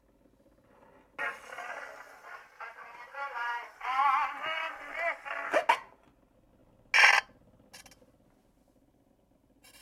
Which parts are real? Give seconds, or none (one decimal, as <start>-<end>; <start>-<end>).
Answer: 0.0-9.8